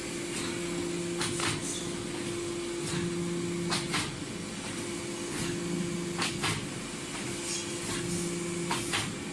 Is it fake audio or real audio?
real